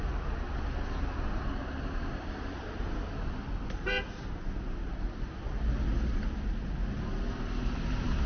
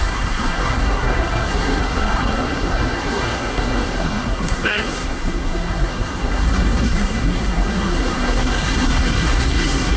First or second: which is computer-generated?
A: second